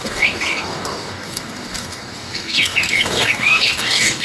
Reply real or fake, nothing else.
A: fake